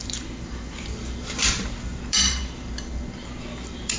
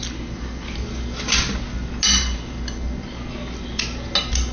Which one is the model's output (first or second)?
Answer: first